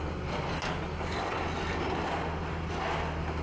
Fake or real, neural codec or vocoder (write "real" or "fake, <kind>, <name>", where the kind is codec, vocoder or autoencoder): real